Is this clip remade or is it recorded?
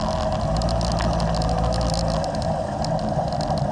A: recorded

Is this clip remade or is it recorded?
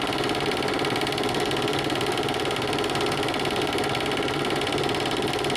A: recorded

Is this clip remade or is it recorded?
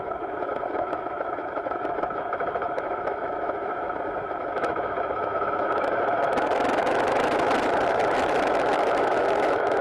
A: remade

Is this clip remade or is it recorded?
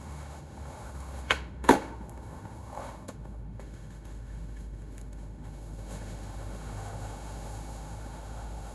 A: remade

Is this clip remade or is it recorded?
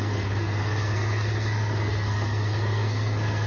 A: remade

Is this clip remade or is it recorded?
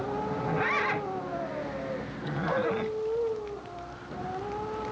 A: recorded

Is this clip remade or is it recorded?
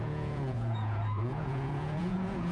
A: remade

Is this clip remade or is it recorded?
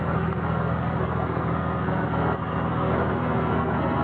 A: remade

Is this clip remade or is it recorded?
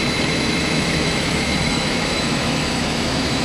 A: remade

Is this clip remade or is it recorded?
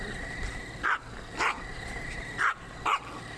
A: recorded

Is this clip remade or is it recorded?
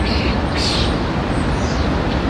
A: recorded